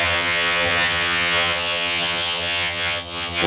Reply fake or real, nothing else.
fake